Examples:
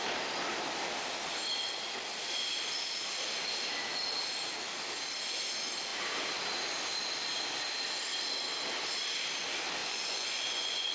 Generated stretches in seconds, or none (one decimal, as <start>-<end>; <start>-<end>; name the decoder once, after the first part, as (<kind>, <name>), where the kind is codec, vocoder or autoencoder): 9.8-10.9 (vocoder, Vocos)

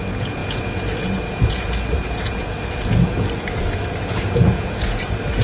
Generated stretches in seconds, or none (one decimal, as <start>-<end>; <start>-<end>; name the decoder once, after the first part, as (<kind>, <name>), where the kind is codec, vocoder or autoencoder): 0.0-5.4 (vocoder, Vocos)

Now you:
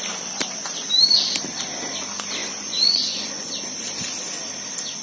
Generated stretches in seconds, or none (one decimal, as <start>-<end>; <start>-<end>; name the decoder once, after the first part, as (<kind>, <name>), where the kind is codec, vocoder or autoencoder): 2.4-3.5 (vocoder, Vocos)

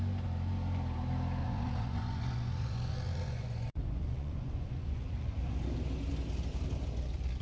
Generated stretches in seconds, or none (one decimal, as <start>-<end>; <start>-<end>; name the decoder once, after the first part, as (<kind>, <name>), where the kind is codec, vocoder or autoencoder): 1.4-5.4 (vocoder, Vocos)